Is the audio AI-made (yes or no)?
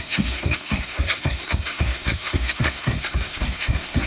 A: yes